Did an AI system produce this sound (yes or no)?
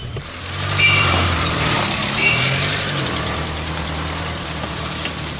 yes